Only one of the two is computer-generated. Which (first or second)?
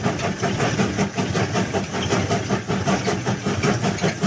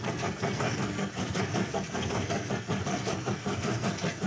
second